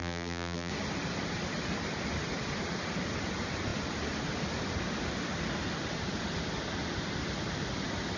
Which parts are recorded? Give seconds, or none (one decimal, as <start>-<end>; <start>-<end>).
0.7-8.2

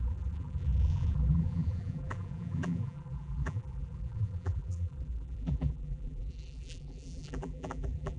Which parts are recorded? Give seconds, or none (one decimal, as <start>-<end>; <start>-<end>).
none

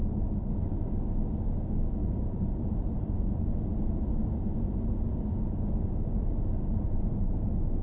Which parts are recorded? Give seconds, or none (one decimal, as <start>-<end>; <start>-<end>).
0.0-2.0; 5.2-6.7; 7.3-7.8